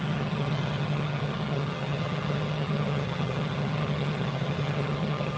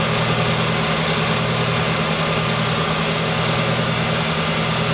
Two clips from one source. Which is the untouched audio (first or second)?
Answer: second